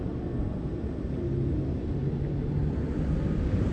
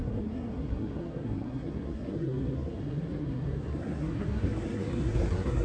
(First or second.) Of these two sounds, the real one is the first